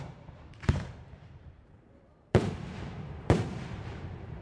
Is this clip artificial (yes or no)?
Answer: yes